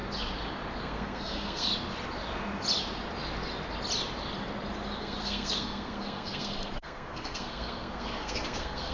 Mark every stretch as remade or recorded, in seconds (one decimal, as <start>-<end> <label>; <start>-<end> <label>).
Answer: 0.0-0.8 recorded; 0.8-1.7 remade; 1.7-5.0 recorded; 5.0-8.9 remade